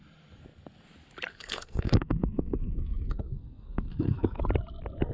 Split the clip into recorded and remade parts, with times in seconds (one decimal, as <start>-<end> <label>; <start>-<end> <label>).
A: 0.0-1.3 recorded; 1.3-4.4 remade; 4.4-5.1 recorded